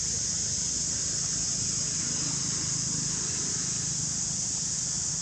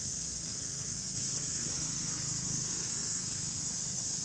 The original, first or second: first